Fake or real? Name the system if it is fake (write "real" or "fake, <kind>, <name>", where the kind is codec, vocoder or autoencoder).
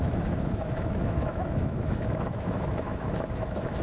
fake, autoencoder, DAC-VAE